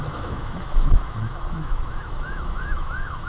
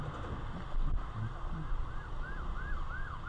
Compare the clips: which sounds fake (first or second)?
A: first